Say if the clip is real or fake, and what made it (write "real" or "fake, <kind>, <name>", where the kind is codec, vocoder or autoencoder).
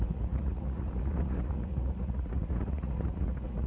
fake, vocoder, Vocos